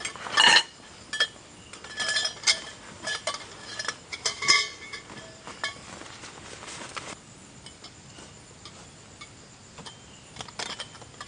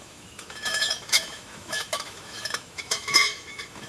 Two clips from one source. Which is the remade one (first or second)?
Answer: second